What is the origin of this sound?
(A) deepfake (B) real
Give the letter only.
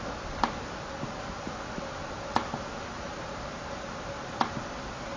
B